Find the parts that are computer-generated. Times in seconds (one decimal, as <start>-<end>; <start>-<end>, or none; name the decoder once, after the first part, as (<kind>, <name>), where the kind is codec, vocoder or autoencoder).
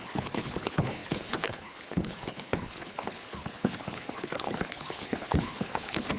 0.0-6.2 (codec, HILCodec)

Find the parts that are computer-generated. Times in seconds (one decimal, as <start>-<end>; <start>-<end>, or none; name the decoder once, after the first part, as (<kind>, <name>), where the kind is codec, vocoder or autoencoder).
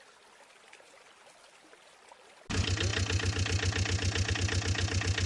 none